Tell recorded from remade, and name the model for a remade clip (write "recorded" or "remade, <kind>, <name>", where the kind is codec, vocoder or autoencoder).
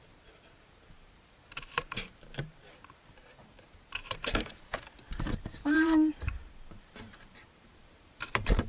remade, vocoder, BigVGAN v2